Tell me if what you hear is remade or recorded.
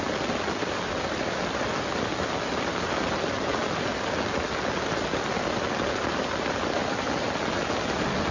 recorded